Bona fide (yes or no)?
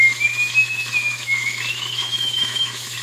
no